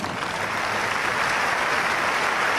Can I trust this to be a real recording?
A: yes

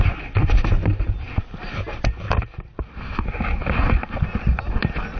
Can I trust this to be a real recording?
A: yes